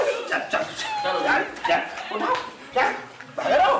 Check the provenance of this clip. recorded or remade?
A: recorded